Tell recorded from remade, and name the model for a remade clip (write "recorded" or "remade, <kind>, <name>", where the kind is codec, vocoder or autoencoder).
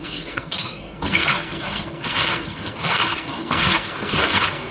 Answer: remade, codec, SNAC